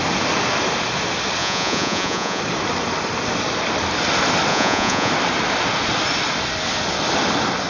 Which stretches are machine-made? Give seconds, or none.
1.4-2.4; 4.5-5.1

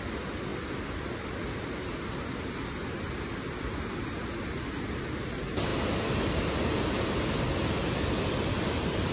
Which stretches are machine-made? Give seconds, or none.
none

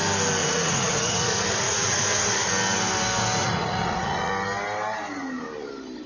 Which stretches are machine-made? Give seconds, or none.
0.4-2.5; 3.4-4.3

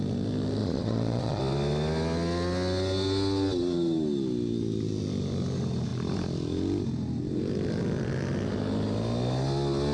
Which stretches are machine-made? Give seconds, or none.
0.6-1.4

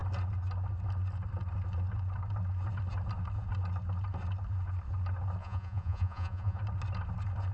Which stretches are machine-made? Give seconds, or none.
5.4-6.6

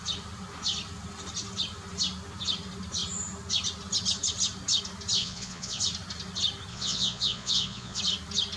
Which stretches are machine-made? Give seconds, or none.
5.2-5.8; 6.7-8.0